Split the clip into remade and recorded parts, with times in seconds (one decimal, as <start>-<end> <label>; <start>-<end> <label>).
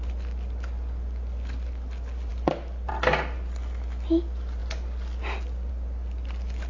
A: 0.0-6.7 recorded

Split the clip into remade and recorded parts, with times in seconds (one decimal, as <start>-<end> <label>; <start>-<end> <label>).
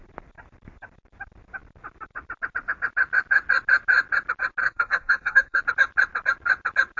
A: 0.0-4.6 recorded; 4.6-5.6 remade; 5.6-7.0 recorded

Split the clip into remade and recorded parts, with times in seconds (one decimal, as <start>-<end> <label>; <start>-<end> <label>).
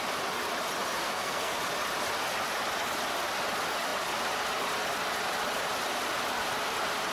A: 0.0-1.0 recorded; 1.0-1.6 remade; 1.6-7.1 recorded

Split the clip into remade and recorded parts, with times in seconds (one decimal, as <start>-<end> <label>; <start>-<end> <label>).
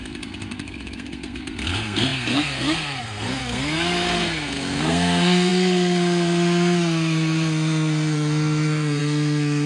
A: 0.0-9.7 remade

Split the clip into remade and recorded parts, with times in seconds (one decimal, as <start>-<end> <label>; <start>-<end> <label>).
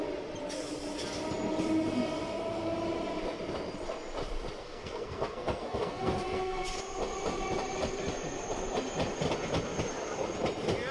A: 0.0-4.6 recorded; 4.6-6.8 remade; 6.8-10.9 recorded